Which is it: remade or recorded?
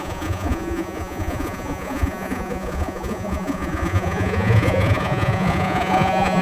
remade